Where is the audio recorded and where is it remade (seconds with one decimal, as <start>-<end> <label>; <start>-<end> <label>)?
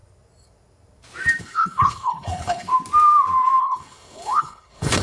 0.0-1.4 recorded; 1.4-2.7 remade; 2.7-3.6 recorded; 3.6-5.0 remade